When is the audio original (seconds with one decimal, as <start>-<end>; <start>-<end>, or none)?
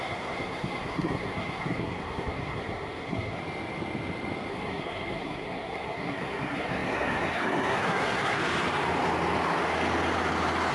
3.4-4.5; 8.4-10.7